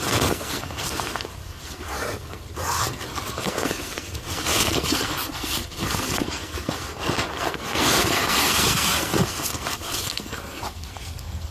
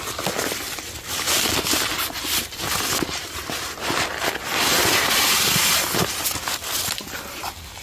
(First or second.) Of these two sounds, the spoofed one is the first